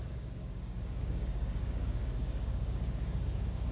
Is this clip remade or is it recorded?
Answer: remade